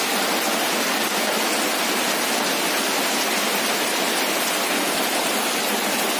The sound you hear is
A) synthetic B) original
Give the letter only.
B